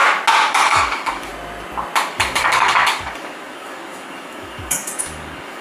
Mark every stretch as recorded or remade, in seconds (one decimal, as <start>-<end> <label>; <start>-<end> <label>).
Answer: 0.0-0.5 recorded; 0.5-1.3 remade; 1.3-2.1 recorded; 2.1-5.6 remade